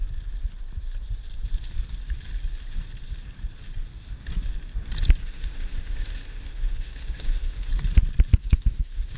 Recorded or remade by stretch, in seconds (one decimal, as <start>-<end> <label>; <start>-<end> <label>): 0.0-5.2 recorded; 5.2-7.7 remade; 7.7-8.4 recorded; 8.4-9.2 remade